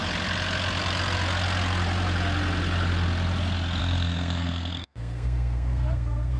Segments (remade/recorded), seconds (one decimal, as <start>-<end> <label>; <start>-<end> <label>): 0.0-3.8 recorded; 3.8-6.4 remade